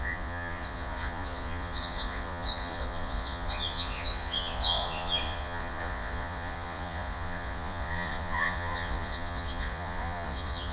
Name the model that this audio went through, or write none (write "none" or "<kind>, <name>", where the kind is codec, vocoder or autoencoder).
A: vocoder, Vocos